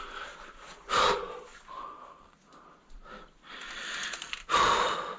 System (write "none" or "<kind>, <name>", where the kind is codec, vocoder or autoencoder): none